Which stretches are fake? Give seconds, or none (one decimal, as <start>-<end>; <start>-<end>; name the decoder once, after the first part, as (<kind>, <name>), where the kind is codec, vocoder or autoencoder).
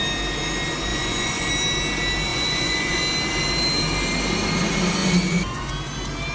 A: 0.9-1.5 (vocoder, Vocos); 2.3-3.0; 5.0-5.7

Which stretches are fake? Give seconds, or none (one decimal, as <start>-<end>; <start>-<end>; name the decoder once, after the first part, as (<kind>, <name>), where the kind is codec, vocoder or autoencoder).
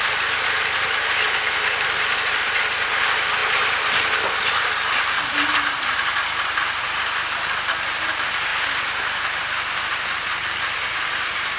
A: none